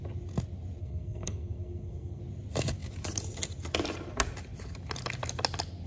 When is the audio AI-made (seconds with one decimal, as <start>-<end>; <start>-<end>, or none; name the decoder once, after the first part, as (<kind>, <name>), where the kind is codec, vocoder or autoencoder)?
0.8-2.2 (codec, SNAC)